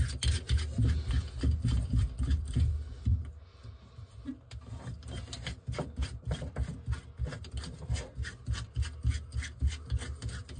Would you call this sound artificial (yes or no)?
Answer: no